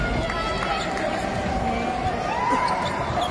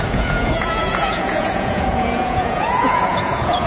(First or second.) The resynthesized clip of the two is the second